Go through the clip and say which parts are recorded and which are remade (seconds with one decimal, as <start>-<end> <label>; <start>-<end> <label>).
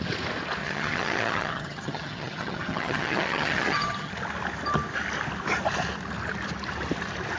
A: 0.0-0.6 recorded; 0.6-4.1 remade; 4.1-7.4 recorded